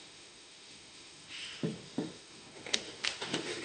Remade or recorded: remade